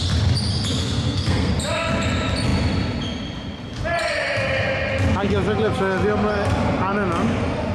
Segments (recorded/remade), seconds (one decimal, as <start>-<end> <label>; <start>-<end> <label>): 0.0-0.8 recorded; 0.8-1.5 remade; 1.5-7.7 recorded